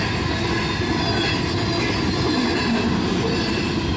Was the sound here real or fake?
real